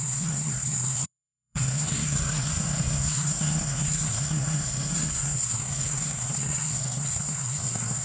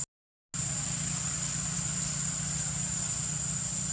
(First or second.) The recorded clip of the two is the second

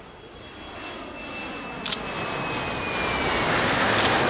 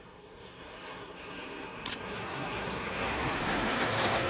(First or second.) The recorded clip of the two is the first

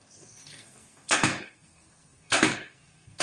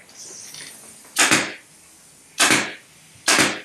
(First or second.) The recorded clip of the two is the second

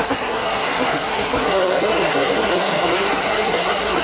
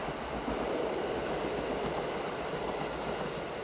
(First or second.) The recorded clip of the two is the second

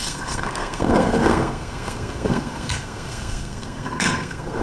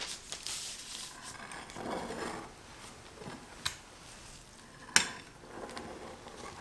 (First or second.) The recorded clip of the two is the second